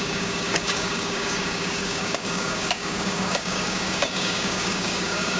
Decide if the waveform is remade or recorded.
remade